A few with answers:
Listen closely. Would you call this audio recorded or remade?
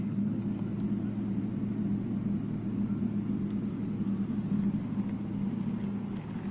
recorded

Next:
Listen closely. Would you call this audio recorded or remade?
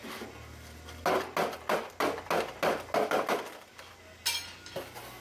recorded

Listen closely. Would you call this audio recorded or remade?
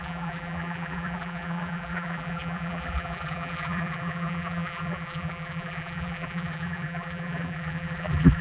remade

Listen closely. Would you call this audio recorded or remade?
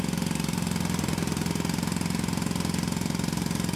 recorded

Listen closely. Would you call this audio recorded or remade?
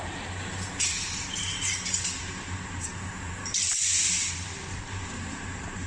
remade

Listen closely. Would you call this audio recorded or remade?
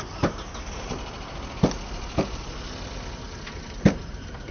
recorded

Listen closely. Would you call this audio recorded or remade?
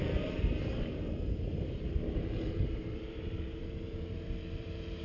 remade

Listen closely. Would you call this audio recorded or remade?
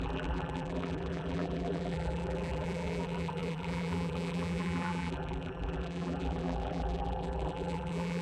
remade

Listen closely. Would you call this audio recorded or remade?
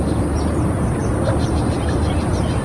recorded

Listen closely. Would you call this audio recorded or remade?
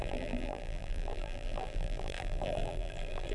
remade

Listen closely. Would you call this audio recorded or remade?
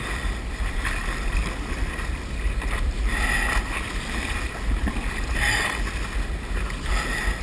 recorded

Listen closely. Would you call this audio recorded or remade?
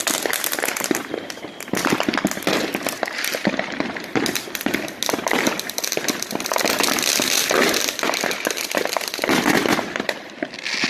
recorded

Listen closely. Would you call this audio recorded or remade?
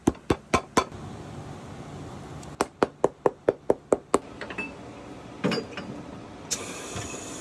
recorded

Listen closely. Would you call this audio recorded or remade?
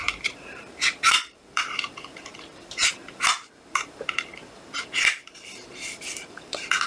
remade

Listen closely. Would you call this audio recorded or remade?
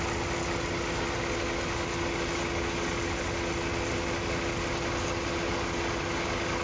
recorded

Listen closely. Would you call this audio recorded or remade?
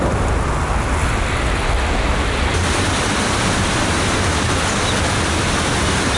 recorded